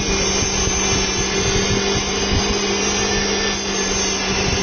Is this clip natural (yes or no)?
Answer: yes